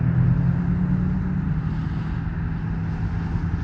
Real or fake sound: real